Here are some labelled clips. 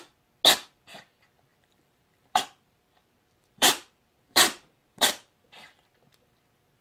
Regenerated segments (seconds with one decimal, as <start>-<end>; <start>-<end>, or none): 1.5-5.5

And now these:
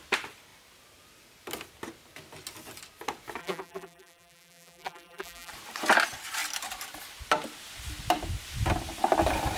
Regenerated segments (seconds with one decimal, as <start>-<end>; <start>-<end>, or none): 3.4-5.5

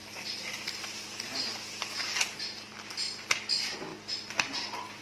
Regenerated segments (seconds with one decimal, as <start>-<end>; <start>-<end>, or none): none